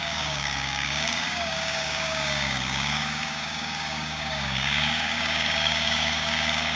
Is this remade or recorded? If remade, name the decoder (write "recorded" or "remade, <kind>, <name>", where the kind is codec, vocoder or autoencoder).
remade, codec, DAC